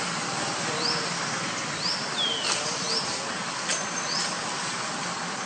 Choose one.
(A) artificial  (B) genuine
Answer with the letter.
B